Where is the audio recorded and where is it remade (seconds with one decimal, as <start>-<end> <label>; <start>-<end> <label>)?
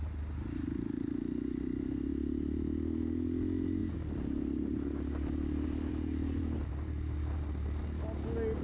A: 0.0-8.6 recorded